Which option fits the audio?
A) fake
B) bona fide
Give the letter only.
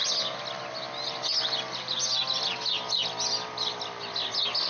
B